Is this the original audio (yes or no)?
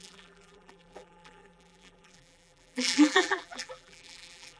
no